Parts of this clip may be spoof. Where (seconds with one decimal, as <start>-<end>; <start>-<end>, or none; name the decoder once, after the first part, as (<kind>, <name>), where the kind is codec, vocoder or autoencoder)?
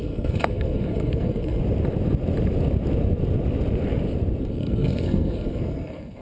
0.0-1.6 (codec, SNAC); 4.4-6.2